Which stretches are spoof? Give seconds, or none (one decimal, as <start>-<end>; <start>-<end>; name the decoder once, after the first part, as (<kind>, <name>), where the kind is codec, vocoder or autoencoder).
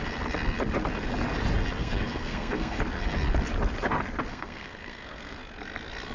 1.8-2.8 (codec, SNAC); 4.3-5.4